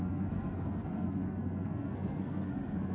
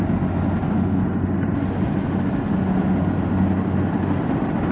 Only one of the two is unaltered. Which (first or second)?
second